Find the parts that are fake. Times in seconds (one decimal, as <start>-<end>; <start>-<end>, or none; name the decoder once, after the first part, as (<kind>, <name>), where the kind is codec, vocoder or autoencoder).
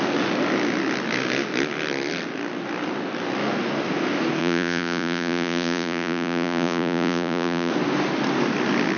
4.4-7.7 (vocoder, Vocos)